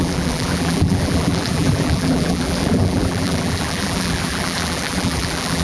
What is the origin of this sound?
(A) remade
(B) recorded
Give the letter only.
A